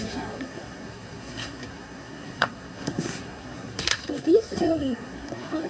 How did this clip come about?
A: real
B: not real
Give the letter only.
B